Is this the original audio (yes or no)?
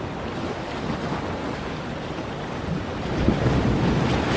no